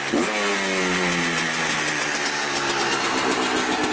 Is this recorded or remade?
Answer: recorded